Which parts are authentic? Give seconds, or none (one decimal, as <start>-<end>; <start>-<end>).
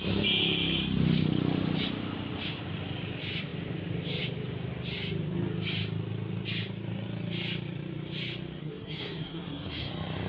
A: 0.0-8.6; 9.9-10.3